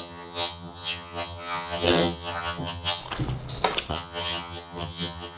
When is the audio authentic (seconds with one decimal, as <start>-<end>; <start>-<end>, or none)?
3.0-3.9